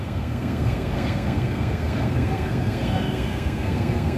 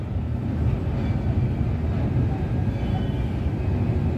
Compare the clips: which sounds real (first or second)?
second